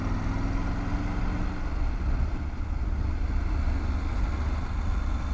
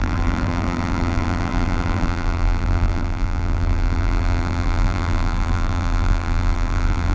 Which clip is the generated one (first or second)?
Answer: second